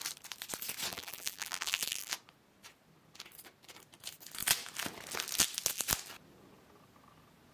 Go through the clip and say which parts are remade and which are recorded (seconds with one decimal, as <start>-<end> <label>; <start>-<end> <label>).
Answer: 0.0-0.9 recorded; 0.9-2.1 remade; 2.1-7.5 recorded